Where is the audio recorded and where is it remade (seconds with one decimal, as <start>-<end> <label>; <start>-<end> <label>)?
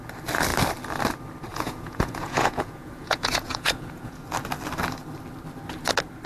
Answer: 0.0-1.5 recorded; 1.5-4.2 remade; 4.2-6.3 recorded